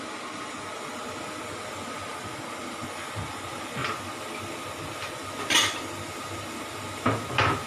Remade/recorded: recorded